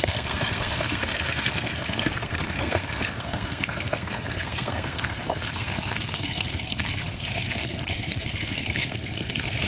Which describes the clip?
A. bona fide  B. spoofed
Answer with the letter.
B